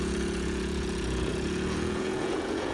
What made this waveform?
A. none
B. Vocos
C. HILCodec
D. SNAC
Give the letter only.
B